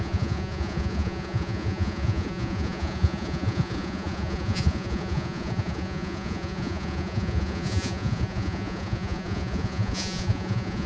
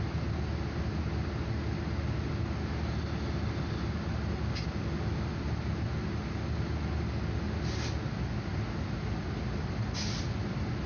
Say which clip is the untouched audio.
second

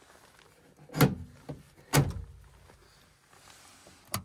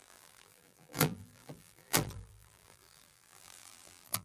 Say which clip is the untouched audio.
first